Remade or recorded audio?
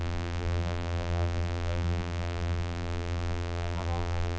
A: remade